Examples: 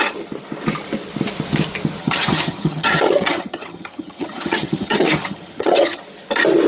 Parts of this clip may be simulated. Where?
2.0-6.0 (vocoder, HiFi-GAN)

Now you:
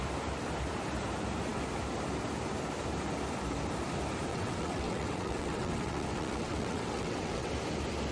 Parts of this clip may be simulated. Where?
4.3-7.5 (vocoder, WaveNeXt)

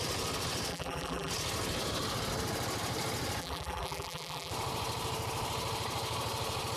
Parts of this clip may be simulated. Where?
0.7-1.3 (vocoder, BigVGAN v2); 3.4-4.5

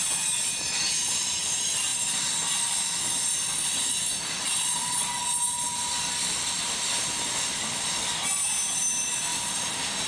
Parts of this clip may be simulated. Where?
none

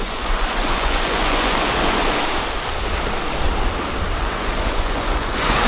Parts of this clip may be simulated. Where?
0.0-2.2 (vocoder, Vocos); 4.2-5.7

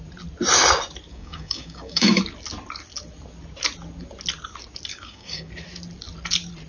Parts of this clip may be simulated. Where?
1.1-2.2 (codec, DAC); 4.9-5.5